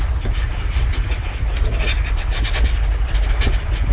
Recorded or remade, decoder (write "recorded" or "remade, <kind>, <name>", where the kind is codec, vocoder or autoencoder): recorded